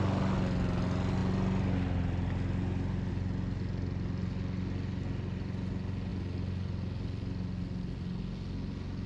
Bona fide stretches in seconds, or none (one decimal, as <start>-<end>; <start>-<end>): 0.0-9.1